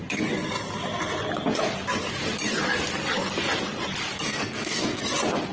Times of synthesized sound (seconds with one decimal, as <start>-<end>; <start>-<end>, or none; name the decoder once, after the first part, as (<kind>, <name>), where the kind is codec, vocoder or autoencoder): 4.3-5.0 (codec, SNAC)